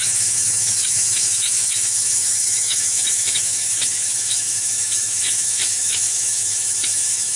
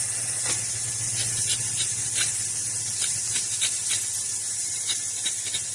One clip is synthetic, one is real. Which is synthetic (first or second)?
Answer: first